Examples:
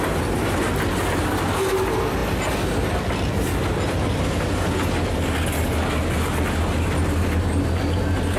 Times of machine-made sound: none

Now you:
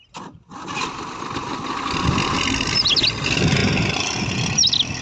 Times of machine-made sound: none

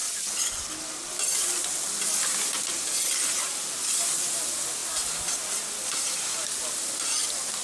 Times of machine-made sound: 4.8-6.0 (vocoder, BigVGAN v2)

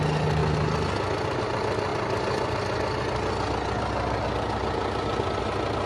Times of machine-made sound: none

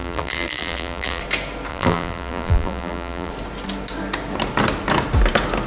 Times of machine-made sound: 0.0-1.2 (vocoder, BigVGAN v2); 1.7-3.3

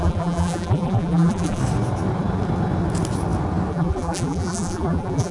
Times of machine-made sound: 0.0-1.6 (vocoder, BigVGAN v2); 3.7-5.3

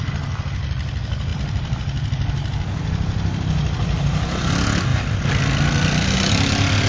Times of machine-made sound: 1.3-4.5 (vocoder, BigVGAN v2); 4.9-6.3